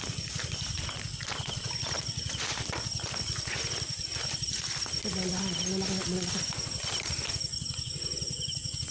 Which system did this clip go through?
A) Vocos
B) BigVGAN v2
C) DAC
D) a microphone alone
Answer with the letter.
D